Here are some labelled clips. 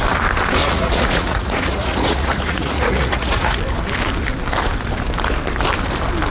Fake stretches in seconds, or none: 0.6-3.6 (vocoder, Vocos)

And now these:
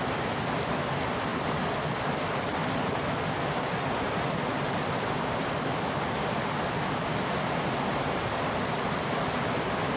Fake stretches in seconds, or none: none

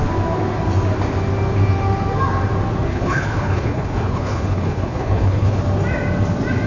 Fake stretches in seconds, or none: 2.9-5.6 (codec, HILCodec)

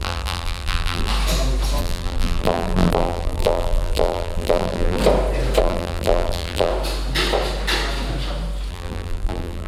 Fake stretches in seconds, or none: 0.0-1.1 (vocoder, BigVGAN v2); 1.8-5.0; 5.6-6.7; 8.7-9.7

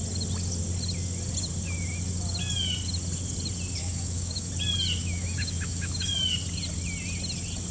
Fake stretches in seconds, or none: 3.8-4.5 (autoencoder, DAC-VAE); 5.0-6.1

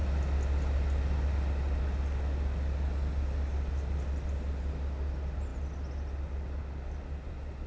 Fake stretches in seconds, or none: none

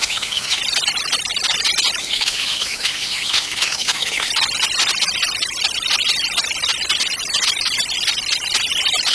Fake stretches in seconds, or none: 0.0-0.6 (autoencoder, DAC-VAE); 2.0-4.3